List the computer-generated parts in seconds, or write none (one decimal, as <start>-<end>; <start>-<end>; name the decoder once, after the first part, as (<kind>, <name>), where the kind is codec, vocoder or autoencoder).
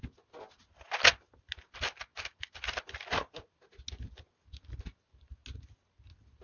none